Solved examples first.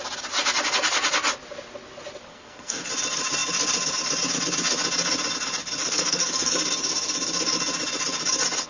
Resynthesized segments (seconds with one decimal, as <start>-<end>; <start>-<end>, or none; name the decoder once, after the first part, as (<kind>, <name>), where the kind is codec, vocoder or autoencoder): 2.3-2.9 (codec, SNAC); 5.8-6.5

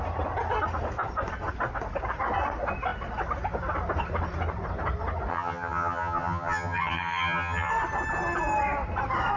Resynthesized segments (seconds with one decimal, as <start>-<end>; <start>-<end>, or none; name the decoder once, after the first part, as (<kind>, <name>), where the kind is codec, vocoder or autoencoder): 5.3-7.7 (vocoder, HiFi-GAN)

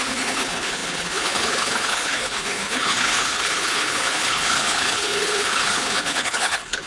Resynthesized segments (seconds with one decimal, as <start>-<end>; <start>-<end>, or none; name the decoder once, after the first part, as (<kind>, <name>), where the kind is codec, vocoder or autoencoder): 0.0-6.9 (codec, HILCodec)